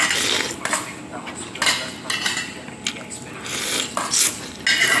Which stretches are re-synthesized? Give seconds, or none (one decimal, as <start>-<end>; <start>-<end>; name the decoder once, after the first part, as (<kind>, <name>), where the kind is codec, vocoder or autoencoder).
none